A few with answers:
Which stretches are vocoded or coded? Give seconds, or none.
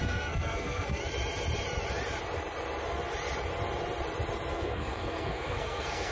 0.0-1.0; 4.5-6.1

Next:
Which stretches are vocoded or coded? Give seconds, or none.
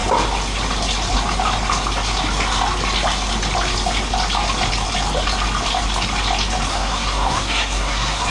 6.7-8.3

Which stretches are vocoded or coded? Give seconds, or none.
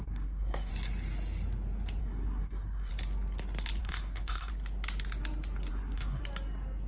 0.0-0.7; 2.0-2.9; 3.8-4.5; 5.7-6.2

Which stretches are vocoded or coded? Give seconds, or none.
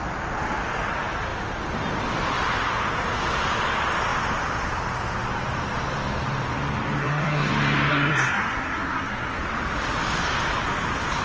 7.0-7.5; 7.9-9.4